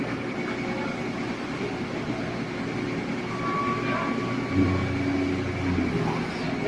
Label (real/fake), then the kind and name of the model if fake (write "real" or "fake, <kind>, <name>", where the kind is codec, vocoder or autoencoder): real